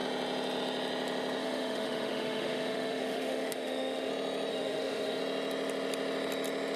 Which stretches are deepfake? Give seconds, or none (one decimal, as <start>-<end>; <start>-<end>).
1.4-4.1; 4.5-5.2